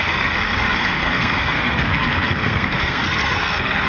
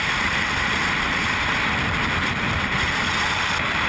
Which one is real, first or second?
second